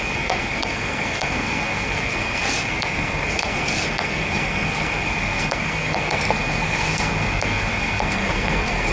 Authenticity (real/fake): fake